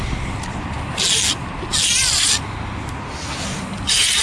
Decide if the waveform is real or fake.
real